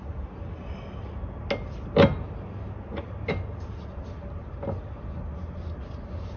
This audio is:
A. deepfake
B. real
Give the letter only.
B